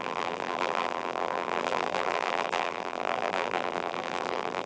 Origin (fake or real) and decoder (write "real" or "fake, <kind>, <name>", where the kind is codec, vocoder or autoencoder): fake, vocoder, BigVGAN v2